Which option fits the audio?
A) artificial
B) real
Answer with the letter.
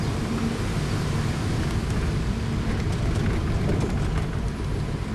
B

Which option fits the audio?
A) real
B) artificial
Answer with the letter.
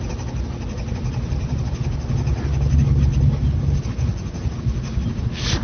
A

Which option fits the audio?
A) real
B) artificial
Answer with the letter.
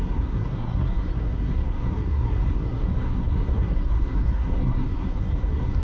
B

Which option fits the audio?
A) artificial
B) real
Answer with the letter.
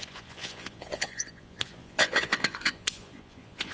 A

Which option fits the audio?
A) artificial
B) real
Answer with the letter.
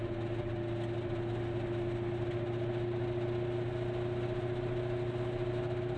B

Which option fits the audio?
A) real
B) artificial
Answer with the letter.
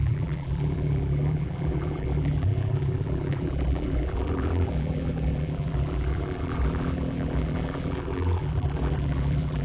B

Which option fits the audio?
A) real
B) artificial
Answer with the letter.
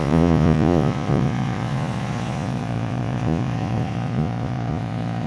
B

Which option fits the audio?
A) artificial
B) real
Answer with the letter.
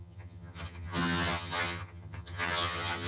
A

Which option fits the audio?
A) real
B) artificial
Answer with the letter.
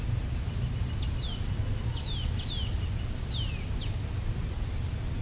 A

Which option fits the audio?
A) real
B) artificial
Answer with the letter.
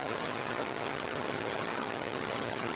B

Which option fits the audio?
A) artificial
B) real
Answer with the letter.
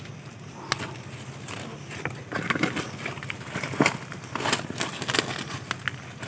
B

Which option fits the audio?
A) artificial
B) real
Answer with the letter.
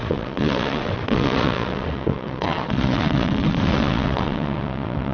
A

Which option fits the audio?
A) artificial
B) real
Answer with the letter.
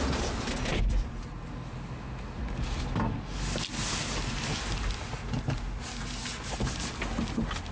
B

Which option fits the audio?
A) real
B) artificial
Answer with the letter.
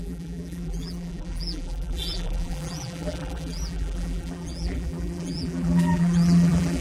B